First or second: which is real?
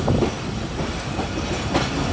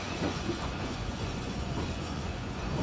first